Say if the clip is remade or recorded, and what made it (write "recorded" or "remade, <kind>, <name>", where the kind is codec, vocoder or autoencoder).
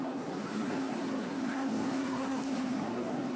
remade, codec, SNAC